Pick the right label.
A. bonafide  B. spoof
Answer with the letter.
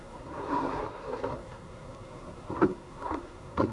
B